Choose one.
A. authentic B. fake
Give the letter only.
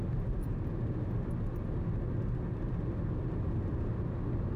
A